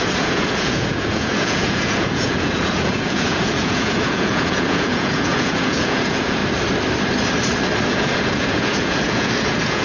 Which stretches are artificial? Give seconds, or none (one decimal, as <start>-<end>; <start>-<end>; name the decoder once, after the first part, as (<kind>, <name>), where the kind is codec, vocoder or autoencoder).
0.0-6.4 (vocoder, Vocos); 7.9-9.8